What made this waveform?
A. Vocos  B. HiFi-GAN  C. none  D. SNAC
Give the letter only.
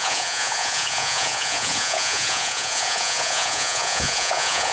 A